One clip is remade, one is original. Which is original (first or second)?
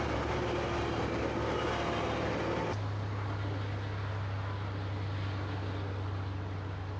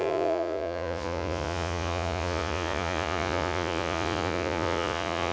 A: first